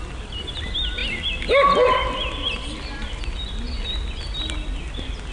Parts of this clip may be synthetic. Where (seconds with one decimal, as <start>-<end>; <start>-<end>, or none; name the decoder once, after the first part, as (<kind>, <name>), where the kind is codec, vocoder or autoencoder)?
1.0-3.2 (vocoder, BigVGAN v2)